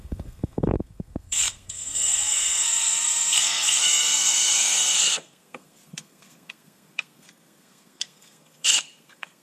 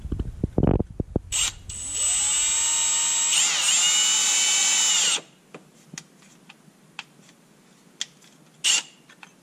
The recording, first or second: second